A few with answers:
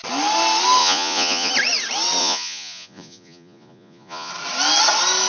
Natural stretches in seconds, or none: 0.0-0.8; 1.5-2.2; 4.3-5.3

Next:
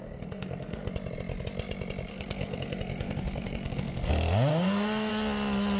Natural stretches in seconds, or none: 0.9-2.1; 4.1-4.5; 5.1-5.8

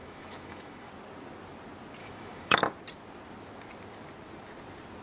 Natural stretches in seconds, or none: 0.9-2.0; 2.6-5.0